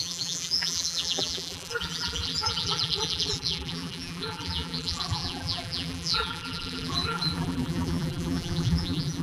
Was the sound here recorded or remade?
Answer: remade